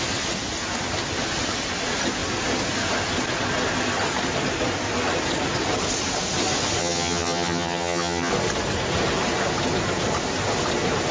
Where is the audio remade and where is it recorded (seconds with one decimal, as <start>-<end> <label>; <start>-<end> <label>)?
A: 0.0-6.8 recorded; 6.8-8.3 remade; 8.3-11.1 recorded